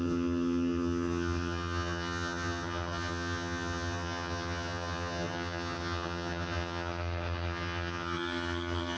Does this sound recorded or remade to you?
remade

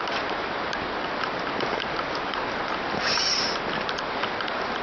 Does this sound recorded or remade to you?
recorded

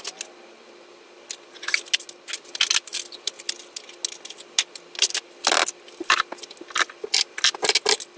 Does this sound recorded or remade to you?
recorded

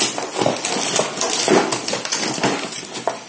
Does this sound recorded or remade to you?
recorded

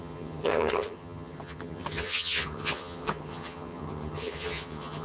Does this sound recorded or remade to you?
remade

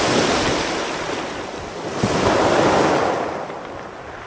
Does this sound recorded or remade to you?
recorded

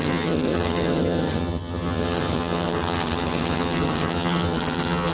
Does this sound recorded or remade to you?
remade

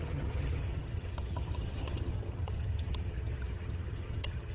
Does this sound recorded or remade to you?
remade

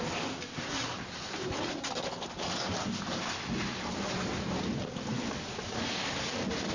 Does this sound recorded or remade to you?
recorded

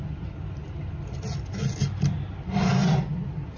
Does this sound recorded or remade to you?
recorded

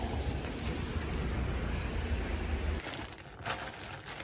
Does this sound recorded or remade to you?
recorded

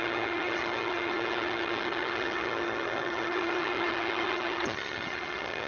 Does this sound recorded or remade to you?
remade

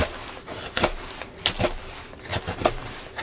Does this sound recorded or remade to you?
recorded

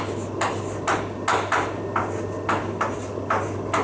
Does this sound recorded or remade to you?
recorded